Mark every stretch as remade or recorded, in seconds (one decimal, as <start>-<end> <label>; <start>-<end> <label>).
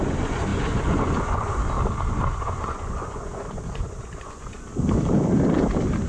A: 0.0-1.6 remade; 1.6-2.1 recorded; 2.1-4.7 remade; 4.7-6.1 recorded